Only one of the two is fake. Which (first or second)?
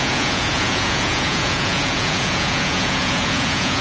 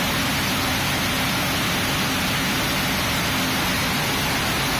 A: first